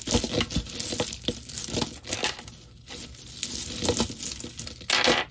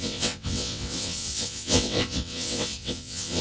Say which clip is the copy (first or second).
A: second